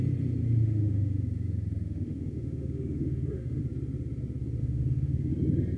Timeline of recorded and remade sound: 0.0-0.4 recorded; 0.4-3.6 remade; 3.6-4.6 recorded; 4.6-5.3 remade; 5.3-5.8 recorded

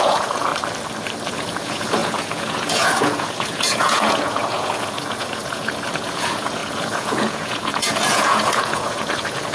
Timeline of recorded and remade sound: 0.0-0.5 remade; 0.5-1.3 recorded; 1.3-9.5 remade

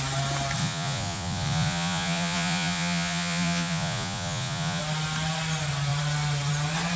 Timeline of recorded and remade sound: 0.0-0.6 recorded; 0.6-4.8 remade; 4.8-7.0 recorded